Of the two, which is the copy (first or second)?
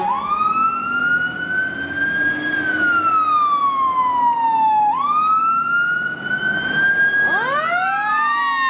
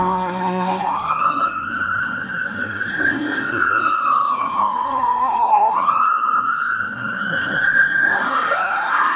second